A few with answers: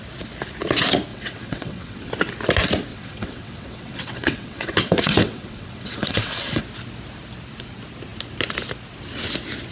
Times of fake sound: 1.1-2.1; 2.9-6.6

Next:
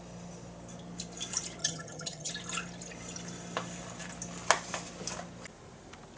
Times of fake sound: 1.6-2.3

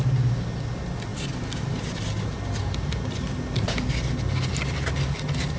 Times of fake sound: none

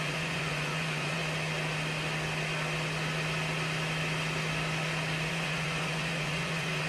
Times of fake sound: 0.0-1.2; 5.3-6.9

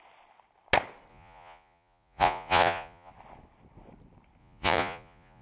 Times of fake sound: 1.1-3.1; 4.4-5.4